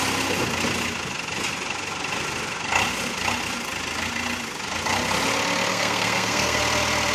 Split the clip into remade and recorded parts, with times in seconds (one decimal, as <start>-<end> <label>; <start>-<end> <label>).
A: 0.0-5.7 recorded; 5.7-6.6 remade; 6.6-7.1 recorded